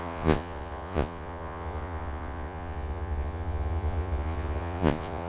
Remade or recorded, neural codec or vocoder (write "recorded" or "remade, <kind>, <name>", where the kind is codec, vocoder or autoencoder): remade, vocoder, Vocos